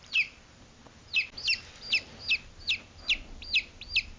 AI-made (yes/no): no